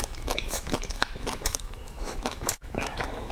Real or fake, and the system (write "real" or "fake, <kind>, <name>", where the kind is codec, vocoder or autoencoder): fake, autoencoder, DAC-VAE